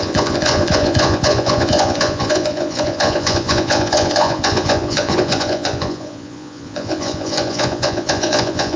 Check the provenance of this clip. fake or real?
fake